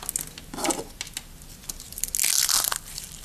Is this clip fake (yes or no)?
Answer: no